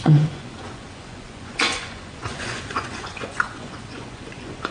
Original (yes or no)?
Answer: no